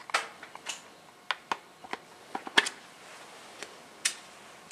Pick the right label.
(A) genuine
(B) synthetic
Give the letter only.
A